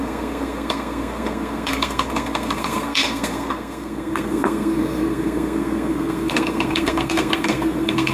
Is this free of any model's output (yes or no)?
no